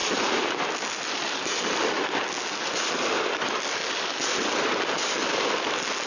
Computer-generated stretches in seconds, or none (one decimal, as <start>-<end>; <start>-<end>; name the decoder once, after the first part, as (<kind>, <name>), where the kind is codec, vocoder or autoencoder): none